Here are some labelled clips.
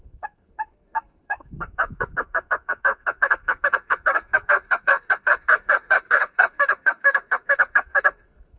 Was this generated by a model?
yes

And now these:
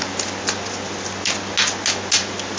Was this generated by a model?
no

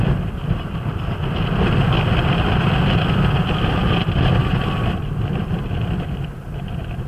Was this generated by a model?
no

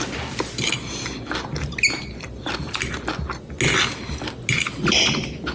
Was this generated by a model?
no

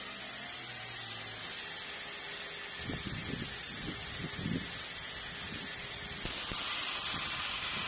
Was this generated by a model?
no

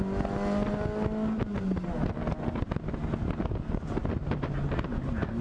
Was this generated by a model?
no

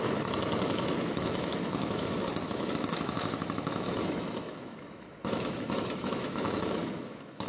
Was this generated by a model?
yes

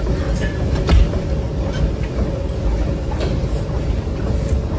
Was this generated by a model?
no